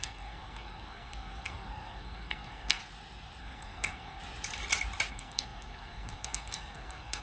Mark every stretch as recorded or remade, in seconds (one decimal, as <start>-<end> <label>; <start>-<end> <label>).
0.0-2.8 remade; 2.8-3.4 recorded; 3.4-4.2 remade; 4.2-5.1 recorded; 5.1-7.2 remade